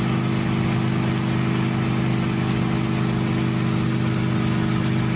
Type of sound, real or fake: real